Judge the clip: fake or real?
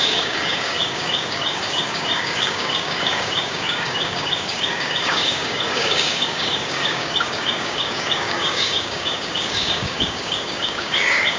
fake